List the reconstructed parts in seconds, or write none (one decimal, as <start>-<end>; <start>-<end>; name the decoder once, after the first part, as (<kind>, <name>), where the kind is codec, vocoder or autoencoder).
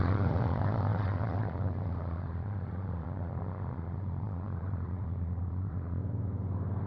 0.0-6.0 (vocoder, Vocos)